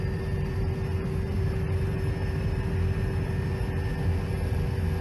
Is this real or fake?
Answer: real